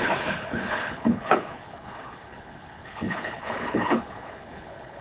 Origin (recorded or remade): remade